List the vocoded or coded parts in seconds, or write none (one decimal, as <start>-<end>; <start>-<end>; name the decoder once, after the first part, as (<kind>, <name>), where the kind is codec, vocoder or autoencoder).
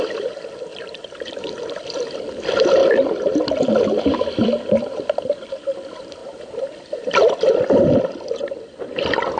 0.0-2.8 (vocoder, BigVGAN v2); 3.7-9.4